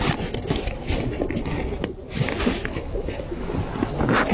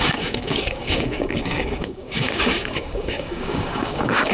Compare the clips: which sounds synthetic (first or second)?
second